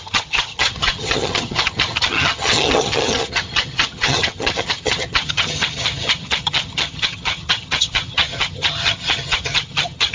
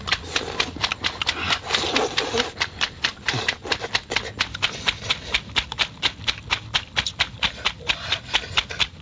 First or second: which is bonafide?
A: second